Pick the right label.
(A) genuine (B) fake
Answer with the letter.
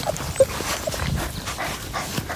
A